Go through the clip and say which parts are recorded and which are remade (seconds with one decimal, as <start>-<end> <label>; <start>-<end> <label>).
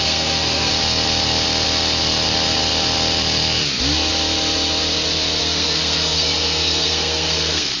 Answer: 0.0-0.7 remade; 0.7-5.4 recorded; 5.4-7.8 remade